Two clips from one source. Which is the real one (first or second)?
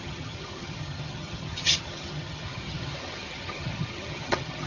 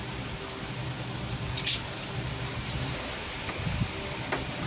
second